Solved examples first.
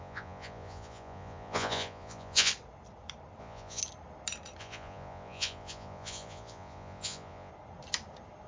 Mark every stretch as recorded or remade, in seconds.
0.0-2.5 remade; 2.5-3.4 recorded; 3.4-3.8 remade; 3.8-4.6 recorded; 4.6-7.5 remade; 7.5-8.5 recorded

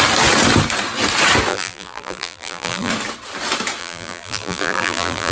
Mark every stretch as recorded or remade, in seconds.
0.0-1.5 recorded; 1.5-2.9 remade; 2.9-3.8 recorded; 3.8-5.3 remade

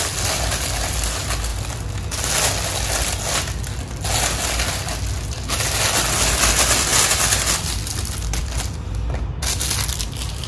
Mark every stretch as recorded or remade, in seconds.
0.0-10.5 recorded

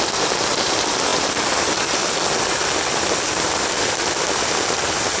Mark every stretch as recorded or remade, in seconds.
0.0-5.2 recorded